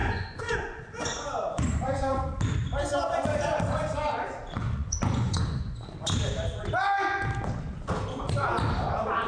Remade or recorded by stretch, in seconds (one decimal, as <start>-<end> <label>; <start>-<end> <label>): 0.0-2.4 remade; 2.4-4.6 recorded; 4.6-5.8 remade; 5.8-9.3 recorded